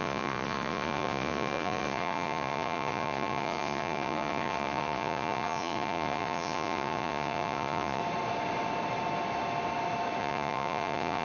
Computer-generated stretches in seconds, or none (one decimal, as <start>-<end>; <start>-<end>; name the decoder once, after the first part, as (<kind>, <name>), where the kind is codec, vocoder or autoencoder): 0.0-8.0 (vocoder, Vocos); 10.2-11.2